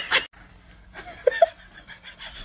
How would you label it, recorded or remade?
recorded